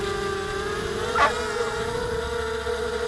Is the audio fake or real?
real